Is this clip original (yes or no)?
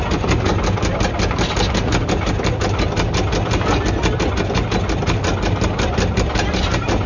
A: yes